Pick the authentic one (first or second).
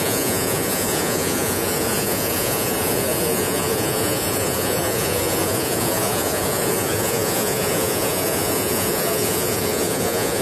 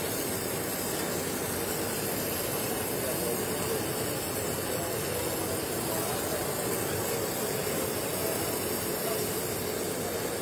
second